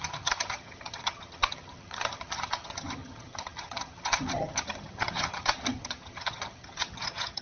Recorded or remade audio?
remade